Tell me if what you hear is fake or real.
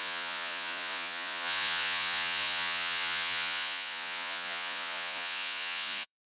fake